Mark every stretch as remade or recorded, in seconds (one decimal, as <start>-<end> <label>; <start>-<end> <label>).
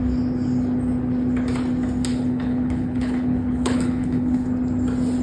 0.0-2.1 recorded; 2.1-4.5 remade; 4.5-5.2 recorded